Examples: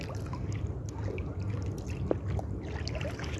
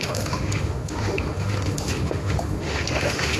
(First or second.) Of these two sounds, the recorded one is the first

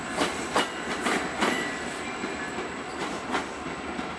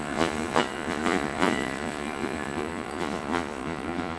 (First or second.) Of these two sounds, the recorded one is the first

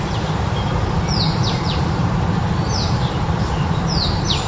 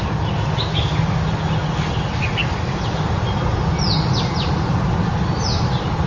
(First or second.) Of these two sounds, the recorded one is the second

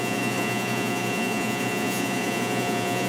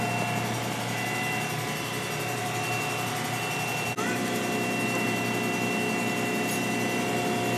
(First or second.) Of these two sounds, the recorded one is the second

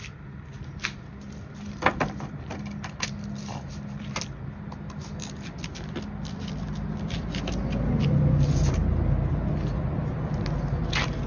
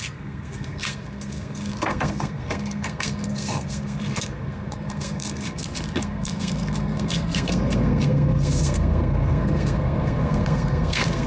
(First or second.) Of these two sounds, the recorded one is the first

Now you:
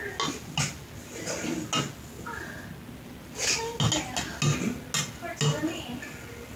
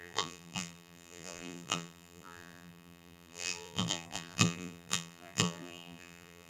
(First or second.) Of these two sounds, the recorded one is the first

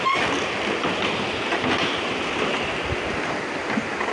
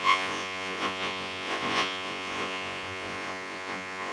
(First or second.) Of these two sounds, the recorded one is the first